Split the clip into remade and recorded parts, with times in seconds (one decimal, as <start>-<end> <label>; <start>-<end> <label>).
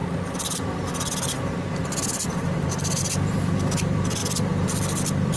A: 0.0-5.4 remade